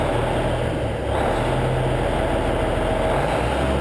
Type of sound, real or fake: real